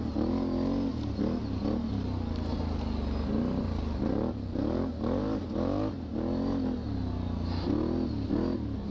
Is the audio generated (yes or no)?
no